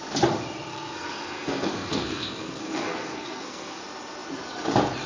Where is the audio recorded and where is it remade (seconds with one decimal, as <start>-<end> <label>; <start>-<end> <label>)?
0.0-0.7 recorded; 0.7-3.8 remade; 3.8-5.1 recorded